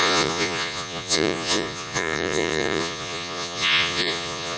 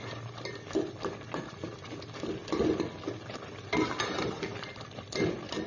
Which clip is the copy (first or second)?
first